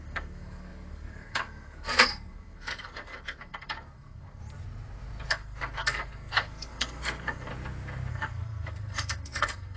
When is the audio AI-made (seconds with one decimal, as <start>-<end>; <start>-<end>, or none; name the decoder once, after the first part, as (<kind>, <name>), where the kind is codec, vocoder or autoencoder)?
0.0-4.4 (codec, SNAC); 5.3-7.5; 8.1-9.8

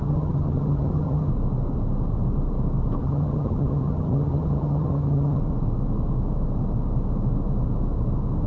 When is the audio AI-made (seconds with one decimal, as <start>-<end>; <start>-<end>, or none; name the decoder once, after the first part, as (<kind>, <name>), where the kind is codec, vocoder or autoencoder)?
0.0-1.3 (vocoder, HiFi-GAN); 3.0-5.4

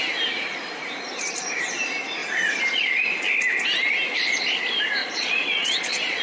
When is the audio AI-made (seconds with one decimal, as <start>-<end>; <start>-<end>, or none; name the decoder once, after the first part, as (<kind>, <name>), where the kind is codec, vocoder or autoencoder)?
5.0-6.2 (vocoder, Vocos)

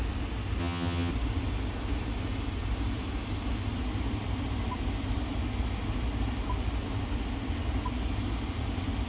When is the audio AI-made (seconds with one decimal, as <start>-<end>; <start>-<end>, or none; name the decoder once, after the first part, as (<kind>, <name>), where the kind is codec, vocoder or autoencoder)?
0.6-1.1 (vocoder, HiFi-GAN)

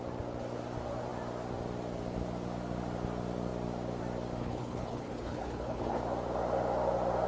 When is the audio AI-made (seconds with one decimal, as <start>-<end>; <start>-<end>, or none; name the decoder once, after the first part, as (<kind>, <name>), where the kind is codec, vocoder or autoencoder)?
4.4-6.0 (codec, HILCodec)

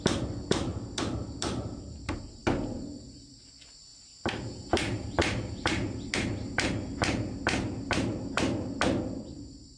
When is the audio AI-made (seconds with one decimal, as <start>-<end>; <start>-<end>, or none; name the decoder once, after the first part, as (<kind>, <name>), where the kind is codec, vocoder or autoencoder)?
none

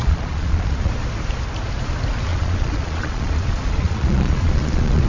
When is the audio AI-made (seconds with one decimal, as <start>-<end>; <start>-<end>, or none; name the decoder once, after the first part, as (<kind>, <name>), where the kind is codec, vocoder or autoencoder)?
0.0-0.9 (vocoder, Vocos); 2.3-5.1

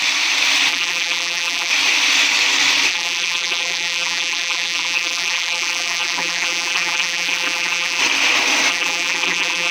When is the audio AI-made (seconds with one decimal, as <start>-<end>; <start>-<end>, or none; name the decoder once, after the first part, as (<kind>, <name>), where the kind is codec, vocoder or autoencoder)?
0.7-1.7 (vocoder, BigVGAN v2); 2.9-8.0; 8.7-9.7